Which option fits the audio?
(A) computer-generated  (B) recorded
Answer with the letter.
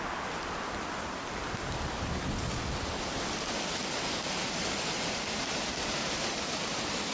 B